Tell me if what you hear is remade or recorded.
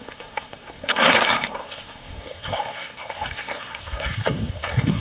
remade